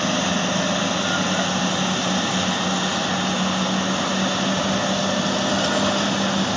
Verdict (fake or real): real